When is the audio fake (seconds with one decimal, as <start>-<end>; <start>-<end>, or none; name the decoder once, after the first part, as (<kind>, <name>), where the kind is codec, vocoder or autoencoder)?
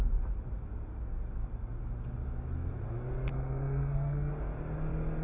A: 3.3-4.3 (codec, SNAC)